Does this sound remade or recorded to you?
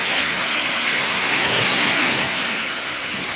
remade